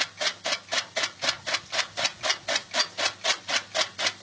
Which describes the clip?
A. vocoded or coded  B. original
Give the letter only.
B